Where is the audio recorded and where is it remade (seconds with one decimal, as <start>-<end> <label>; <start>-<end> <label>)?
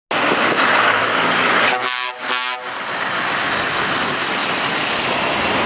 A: 0.0-0.7 recorded; 0.7-2.2 remade; 2.2-5.7 recorded